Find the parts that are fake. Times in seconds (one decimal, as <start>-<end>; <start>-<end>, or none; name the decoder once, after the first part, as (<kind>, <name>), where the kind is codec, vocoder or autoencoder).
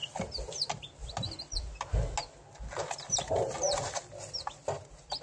none